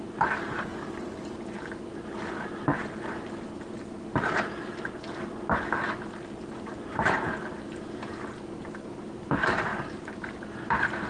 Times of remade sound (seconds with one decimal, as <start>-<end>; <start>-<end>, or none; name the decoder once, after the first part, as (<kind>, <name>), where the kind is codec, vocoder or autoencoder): none